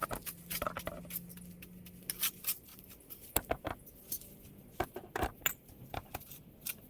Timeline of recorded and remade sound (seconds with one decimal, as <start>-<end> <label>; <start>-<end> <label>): 0.0-6.9 recorded